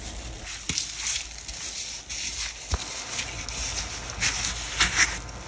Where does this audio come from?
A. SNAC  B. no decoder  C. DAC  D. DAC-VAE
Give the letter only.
B